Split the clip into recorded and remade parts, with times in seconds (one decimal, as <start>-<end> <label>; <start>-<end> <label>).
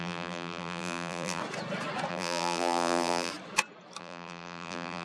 0.0-1.4 remade; 1.4-2.1 recorded; 2.1-3.3 remade; 3.3-4.0 recorded; 4.0-5.0 remade